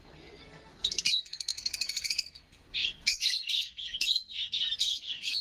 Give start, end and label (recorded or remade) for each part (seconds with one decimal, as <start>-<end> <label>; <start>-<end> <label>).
0.0-5.4 remade